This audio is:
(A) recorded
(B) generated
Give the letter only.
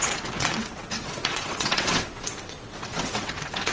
B